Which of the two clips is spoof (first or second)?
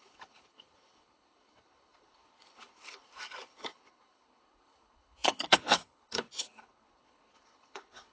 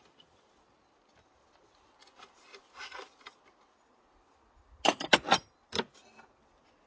first